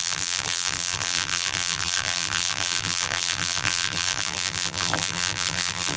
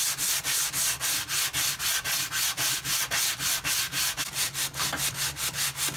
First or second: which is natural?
second